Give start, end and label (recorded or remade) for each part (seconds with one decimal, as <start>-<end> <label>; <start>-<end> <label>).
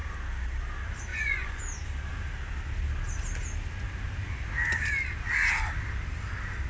0.0-1.1 recorded; 1.1-1.6 remade; 1.6-6.7 recorded